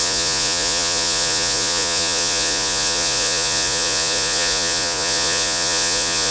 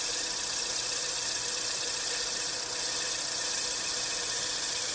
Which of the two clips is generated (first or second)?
first